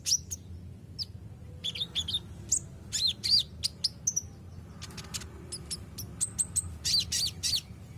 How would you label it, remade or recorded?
recorded